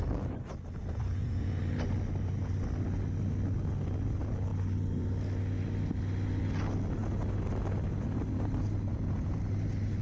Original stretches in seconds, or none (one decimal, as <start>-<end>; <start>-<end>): 0.0-0.8; 1.6-8.9; 9.4-10.0